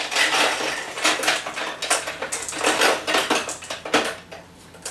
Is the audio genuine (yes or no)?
yes